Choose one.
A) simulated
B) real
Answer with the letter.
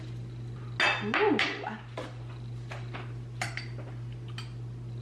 B